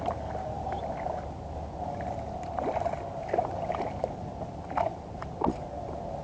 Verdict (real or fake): real